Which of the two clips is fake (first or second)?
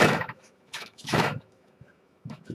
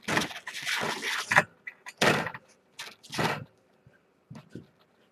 first